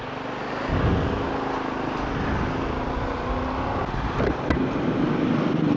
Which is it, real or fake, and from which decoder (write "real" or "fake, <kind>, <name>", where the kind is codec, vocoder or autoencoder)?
real